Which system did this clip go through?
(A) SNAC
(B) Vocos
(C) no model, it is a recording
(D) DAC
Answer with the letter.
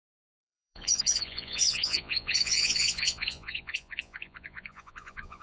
B